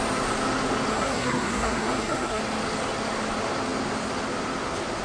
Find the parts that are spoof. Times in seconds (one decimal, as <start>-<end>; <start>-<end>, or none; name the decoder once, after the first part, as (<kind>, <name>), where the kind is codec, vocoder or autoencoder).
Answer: 0.9-2.4 (codec, SNAC)